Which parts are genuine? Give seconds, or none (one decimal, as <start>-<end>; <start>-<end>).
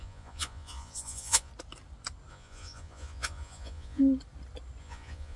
1.5-2.3; 4.0-4.8